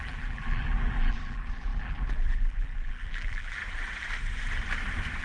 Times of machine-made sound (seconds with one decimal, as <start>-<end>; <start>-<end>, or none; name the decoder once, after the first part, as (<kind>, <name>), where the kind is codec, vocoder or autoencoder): 0.0-3.6 (vocoder, BigVGAN v2)